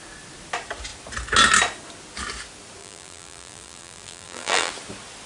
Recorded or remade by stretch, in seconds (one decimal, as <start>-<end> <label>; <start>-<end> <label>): 0.0-2.8 recorded; 2.8-4.7 remade; 4.7-5.3 recorded

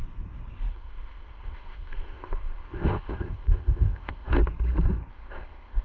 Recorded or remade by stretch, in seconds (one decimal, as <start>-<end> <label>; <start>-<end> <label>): 0.0-0.7 recorded; 0.7-4.3 remade; 4.3-5.1 recorded; 5.1-5.8 remade

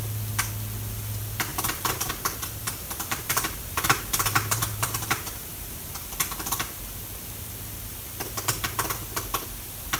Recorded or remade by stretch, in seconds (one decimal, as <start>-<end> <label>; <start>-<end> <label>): 0.0-1.5 recorded; 1.5-2.1 remade; 2.1-2.6 recorded; 2.6-5.9 remade; 5.9-10.0 recorded

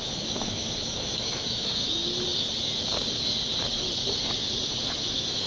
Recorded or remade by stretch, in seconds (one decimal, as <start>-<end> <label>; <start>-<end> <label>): 0.0-2.0 remade; 2.0-4.8 recorded; 4.8-5.5 remade

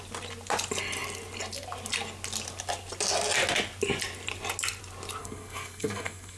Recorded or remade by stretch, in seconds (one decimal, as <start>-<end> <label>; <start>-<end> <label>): 0.0-5.2 recorded; 5.2-6.4 remade

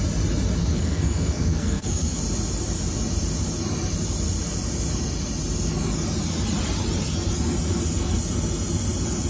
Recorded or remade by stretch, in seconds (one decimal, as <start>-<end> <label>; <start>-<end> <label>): 0.0-0.6 recorded; 0.6-2.2 remade; 2.2-9.3 recorded

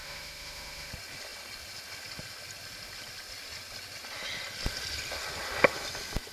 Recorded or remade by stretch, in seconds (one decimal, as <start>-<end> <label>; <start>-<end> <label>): 0.0-0.9 remade; 0.9-6.3 recorded

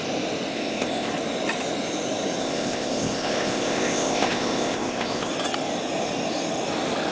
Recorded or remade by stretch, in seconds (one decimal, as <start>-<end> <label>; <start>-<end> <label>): 0.0-0.5 recorded; 0.5-1.1 remade; 1.1-2.4 recorded; 2.4-5.3 remade; 5.3-7.1 recorded